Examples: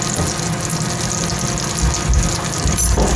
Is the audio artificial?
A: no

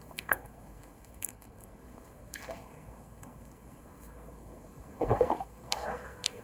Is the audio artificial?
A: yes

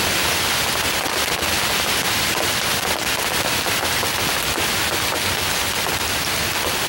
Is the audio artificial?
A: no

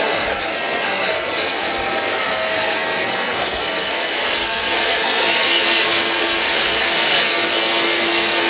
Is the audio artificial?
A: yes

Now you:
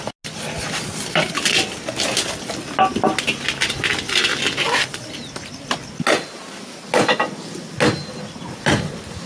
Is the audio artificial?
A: no